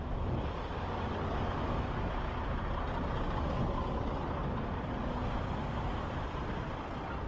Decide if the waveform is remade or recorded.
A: recorded